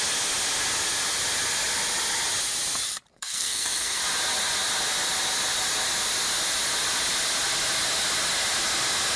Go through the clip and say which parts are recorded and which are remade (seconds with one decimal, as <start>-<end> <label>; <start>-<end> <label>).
0.0-3.1 recorded; 3.1-4.0 remade; 4.0-9.2 recorded

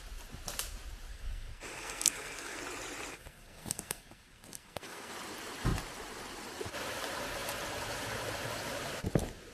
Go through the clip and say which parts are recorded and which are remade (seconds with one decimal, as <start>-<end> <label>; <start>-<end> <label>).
0.0-1.1 recorded; 1.1-2.6 remade; 2.6-3.1 recorded; 3.1-5.1 remade; 5.1-9.5 recorded

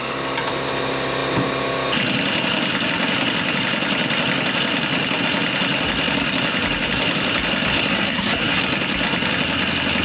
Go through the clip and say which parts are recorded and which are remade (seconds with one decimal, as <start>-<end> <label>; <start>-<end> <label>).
0.0-7.9 recorded; 7.9-8.6 remade; 8.6-10.0 recorded

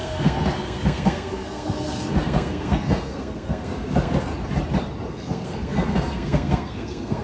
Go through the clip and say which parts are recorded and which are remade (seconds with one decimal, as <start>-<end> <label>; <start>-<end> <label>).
0.0-4.3 remade; 4.3-5.1 recorded; 5.1-7.2 remade